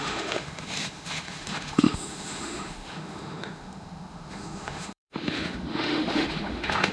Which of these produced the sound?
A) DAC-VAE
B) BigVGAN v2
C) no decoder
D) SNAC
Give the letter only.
A